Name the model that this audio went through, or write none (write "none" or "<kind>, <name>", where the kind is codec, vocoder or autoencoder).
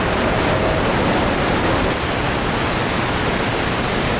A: none